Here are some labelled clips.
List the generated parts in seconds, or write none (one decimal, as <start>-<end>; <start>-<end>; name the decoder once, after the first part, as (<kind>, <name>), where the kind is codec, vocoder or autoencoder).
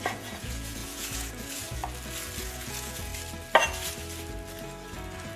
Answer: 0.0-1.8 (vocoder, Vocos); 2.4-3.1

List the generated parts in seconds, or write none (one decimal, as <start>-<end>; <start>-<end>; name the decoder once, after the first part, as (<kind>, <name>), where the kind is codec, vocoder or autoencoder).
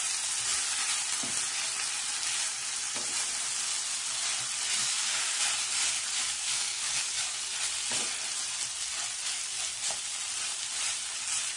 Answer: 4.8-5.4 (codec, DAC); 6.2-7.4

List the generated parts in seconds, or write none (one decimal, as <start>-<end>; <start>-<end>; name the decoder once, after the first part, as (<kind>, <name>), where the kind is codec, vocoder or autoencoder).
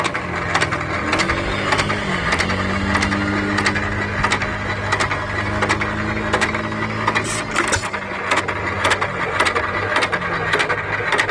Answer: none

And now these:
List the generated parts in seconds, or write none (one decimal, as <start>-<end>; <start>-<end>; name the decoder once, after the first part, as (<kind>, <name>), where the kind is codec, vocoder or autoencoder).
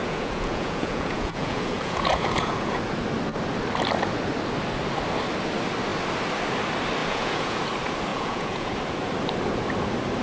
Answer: 0.0-2.8 (vocoder, Vocos); 7.0-7.6; 8.1-8.7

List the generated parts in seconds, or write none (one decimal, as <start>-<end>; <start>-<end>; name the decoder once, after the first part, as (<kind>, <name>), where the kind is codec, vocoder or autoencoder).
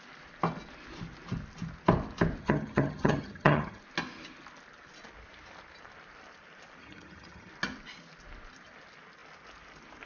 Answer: 2.4-3.8 (vocoder, HiFi-GAN); 6.8-7.5